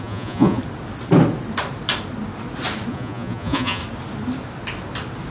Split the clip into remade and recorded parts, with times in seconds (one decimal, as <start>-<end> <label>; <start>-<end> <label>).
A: 0.0-0.6 remade; 0.6-2.9 recorded; 2.9-3.8 remade; 3.8-5.3 recorded